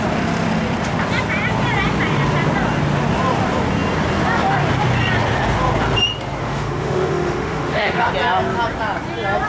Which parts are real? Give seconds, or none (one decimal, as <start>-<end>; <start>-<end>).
0.0-6.4; 8.1-9.5

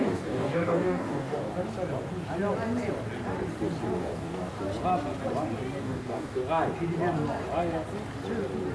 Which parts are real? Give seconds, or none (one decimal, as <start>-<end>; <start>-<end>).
1.5-4.0; 4.4-5.8; 6.4-8.7

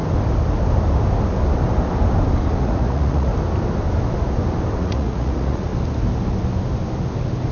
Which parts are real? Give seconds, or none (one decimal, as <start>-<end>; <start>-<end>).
0.0-2.6; 3.3-4.8; 5.7-7.5

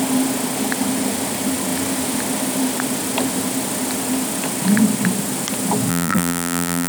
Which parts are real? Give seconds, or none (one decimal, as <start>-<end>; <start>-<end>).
0.0-5.9

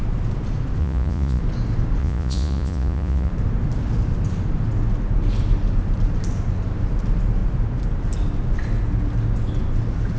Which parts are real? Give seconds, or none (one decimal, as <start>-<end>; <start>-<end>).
0.0-0.8; 1.4-2.0; 3.3-10.2

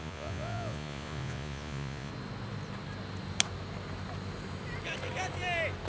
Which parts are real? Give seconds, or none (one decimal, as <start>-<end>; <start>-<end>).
2.1-5.9

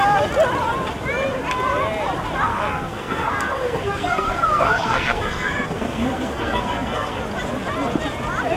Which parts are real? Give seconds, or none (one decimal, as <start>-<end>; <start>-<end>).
0.0-2.5; 7.2-8.6